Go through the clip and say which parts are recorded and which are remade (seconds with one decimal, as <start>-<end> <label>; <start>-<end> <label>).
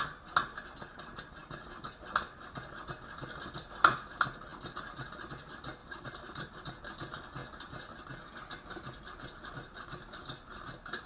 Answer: 0.0-5.8 recorded; 5.8-6.6 remade; 6.6-11.1 recorded